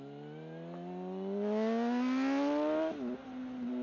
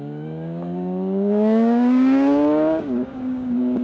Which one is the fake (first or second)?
second